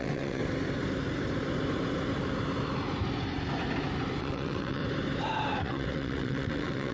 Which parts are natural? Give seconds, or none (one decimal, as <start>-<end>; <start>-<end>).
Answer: 0.4-4.2; 4.8-5.6